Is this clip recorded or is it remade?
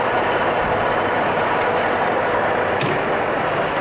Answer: recorded